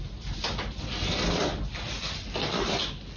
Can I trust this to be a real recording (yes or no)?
yes